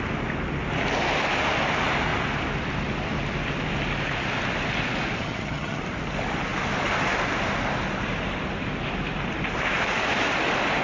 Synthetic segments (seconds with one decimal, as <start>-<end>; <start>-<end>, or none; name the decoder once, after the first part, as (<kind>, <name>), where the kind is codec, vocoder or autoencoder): 5.2-5.8 (vocoder, HiFi-GAN)